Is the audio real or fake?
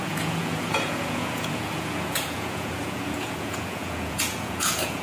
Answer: fake